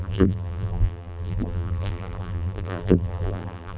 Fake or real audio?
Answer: fake